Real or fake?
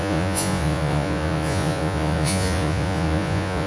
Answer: fake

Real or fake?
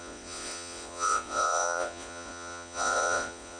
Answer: fake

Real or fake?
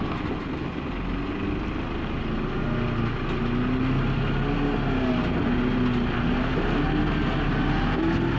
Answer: real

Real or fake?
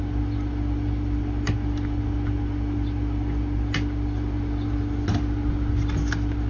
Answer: real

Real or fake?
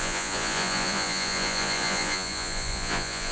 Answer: fake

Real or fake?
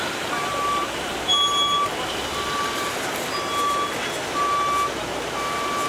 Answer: real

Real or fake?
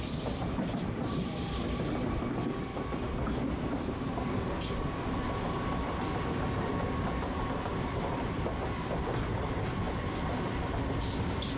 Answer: real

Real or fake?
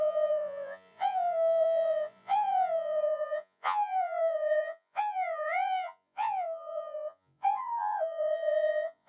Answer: fake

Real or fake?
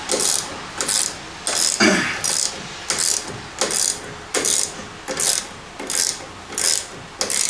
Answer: real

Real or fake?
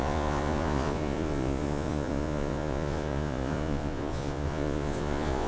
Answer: fake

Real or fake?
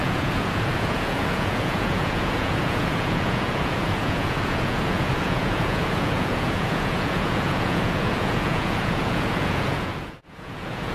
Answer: fake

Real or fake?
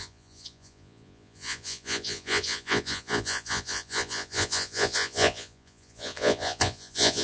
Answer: fake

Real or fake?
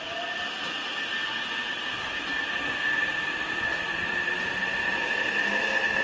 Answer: real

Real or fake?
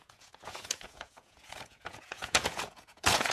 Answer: fake